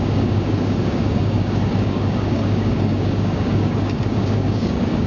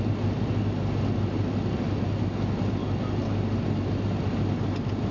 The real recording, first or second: second